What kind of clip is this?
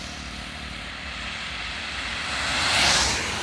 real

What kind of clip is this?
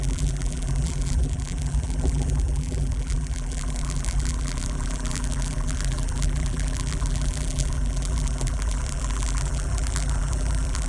fake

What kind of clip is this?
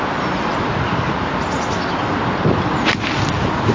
real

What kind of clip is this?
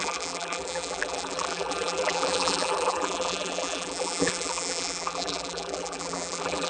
fake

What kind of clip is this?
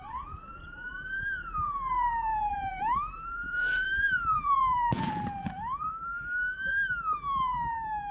fake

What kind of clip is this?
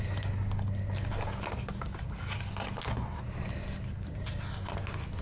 real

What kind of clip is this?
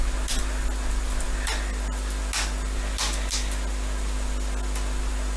real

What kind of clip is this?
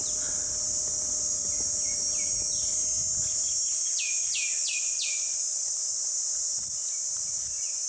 real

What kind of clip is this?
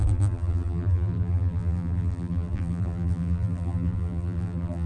fake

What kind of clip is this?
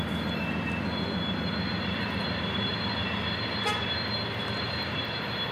real